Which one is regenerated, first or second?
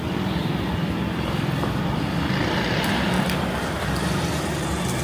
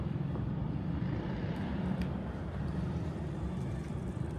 second